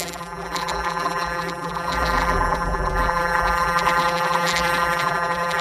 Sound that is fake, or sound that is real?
fake